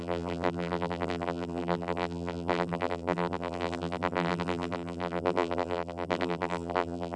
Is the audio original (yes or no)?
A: no